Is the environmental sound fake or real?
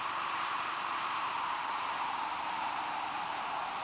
fake